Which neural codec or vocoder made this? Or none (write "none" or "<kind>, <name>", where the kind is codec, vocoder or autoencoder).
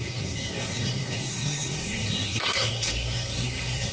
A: codec, SNAC